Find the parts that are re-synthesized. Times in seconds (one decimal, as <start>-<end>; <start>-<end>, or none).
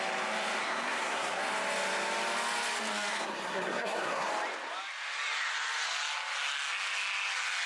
0.6-1.4; 3.1-4.3